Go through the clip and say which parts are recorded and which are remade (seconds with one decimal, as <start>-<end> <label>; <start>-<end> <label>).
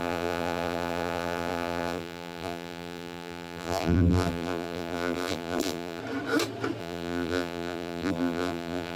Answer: 0.0-6.0 remade; 6.0-6.8 recorded; 6.8-9.0 remade